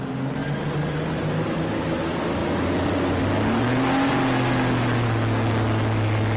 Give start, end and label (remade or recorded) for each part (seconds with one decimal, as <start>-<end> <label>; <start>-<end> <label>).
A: 0.0-6.4 recorded